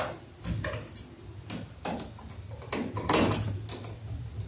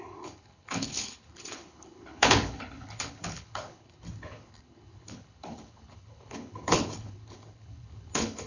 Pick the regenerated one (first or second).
second